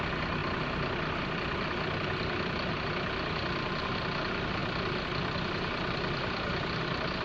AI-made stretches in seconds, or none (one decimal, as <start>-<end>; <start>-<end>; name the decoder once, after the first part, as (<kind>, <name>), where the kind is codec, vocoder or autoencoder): none